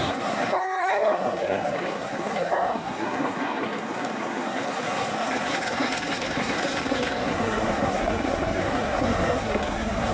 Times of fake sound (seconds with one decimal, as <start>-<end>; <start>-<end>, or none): 0.0-10.1